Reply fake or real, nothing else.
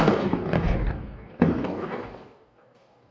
fake